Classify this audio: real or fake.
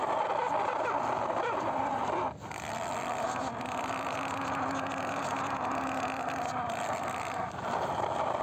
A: real